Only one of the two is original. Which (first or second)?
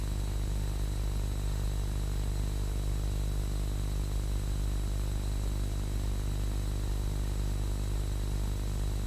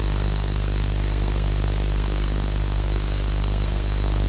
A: first